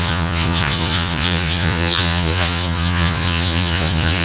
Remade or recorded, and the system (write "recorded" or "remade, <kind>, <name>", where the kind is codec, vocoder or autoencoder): remade, vocoder, Vocos